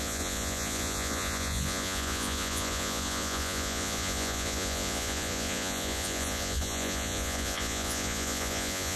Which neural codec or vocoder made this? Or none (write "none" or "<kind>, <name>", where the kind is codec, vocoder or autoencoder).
vocoder, Vocos